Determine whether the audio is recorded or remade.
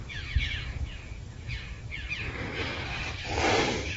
recorded